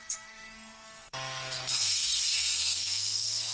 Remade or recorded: remade